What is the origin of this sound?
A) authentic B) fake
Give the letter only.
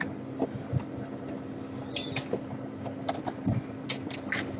A